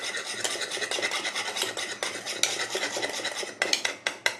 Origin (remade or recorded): recorded